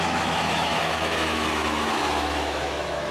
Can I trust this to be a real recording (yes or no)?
no